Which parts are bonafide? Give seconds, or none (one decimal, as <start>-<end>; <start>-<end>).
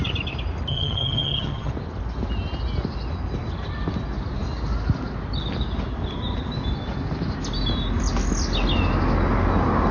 0.0-0.7; 1.7-9.9